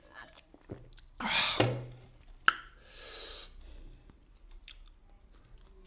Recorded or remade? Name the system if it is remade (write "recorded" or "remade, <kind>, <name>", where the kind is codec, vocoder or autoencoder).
recorded